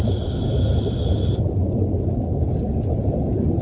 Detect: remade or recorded recorded